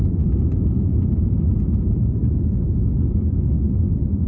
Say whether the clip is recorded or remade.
recorded